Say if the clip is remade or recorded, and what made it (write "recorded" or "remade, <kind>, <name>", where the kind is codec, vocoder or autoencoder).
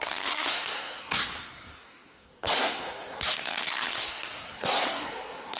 remade, codec, SNAC